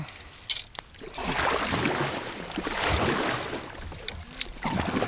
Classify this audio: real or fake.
real